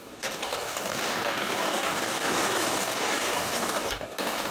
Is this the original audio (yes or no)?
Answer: no